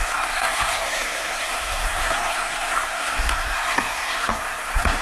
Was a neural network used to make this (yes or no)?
yes